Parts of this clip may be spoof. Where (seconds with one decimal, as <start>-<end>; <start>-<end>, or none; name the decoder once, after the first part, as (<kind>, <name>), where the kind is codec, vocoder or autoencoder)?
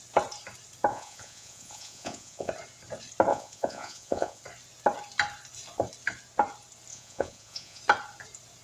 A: 0.9-2.5 (vocoder, Vocos); 3.3-4.4; 6.9-7.8